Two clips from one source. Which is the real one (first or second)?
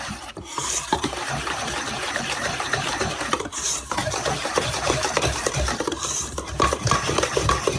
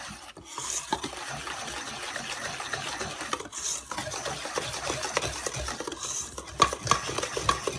second